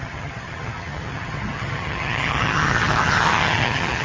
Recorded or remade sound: remade